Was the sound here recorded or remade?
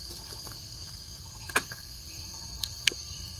remade